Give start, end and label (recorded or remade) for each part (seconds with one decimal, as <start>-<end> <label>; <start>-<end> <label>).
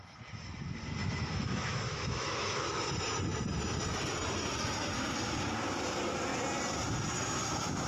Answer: 0.0-1.0 recorded; 1.0-2.9 remade; 2.9-7.9 recorded